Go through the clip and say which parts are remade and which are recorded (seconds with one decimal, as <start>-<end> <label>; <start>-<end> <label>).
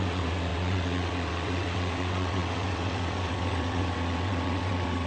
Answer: 0.0-5.1 remade